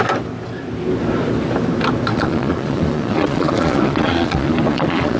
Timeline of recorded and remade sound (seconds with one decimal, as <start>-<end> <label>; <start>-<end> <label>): 0.0-2.1 recorded; 2.1-5.2 remade